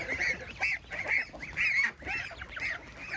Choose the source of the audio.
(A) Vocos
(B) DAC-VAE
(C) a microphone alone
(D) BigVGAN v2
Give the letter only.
C